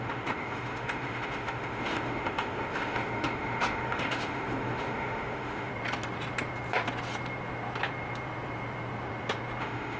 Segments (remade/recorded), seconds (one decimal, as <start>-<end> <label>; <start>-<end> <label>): 0.0-5.7 remade; 5.7-9.6 recorded; 9.6-10.0 remade

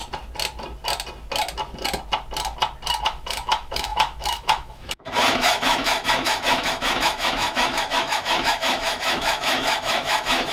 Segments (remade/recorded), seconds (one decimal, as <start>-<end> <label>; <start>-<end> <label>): 0.0-3.0 recorded; 3.0-10.5 remade

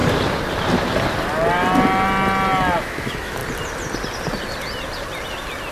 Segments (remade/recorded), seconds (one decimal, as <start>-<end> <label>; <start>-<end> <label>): 0.0-2.8 recorded; 2.8-3.4 remade; 3.4-5.7 recorded

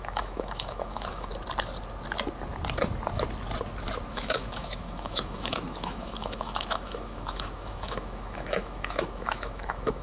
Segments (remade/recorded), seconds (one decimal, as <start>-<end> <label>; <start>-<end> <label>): 0.0-1.3 remade; 1.3-4.1 recorded; 4.1-10.0 remade